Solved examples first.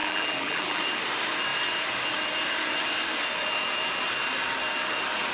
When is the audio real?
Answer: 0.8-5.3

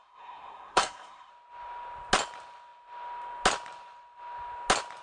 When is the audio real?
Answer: 1.3-5.0